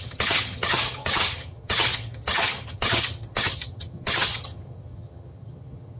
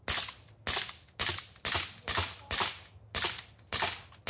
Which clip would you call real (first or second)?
second